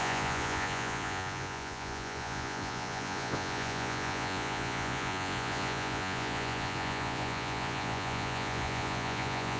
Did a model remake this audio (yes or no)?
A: yes